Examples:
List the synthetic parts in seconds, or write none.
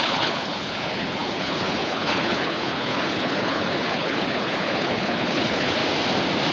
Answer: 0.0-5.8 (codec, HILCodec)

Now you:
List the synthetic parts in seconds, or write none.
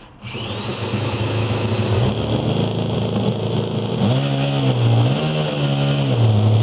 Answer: 0.7-1.7 (autoencoder, DAC-VAE)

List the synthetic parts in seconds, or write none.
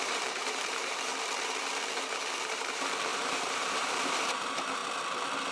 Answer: 0.0-1.1 (vocoder, BigVGAN v2); 2.4-4.8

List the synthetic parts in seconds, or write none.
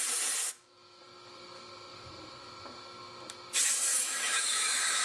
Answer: 0.4-1.0 (autoencoder, DAC-VAE); 3.9-5.0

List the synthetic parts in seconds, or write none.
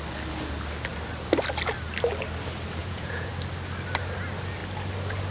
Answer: 2.8-3.3 (vocoder, Vocos)